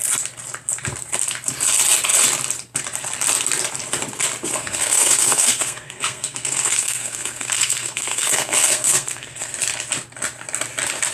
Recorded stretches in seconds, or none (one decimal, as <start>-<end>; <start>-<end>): 0.0-4.6; 9.5-11.1